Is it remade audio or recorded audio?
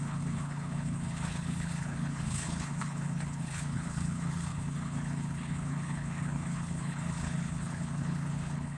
remade